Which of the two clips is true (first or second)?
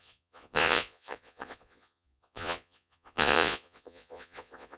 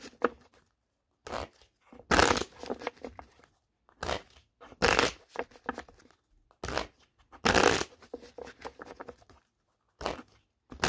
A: second